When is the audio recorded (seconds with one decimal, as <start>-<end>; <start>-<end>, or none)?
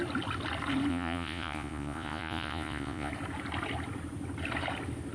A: 0.0-0.9; 3.1-5.1